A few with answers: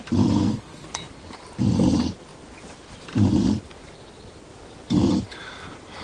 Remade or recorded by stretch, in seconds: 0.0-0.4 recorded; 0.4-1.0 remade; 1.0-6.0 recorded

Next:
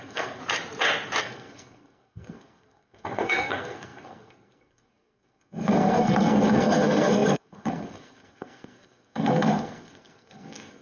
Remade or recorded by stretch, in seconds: 0.0-0.4 remade; 0.4-1.2 recorded; 1.2-10.8 remade

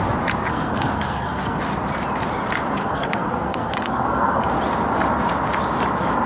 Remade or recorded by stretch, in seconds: 0.0-0.5 recorded; 0.5-1.6 remade; 1.6-2.8 recorded; 2.8-4.4 remade; 4.4-6.3 recorded